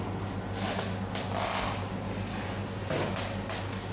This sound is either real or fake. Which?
real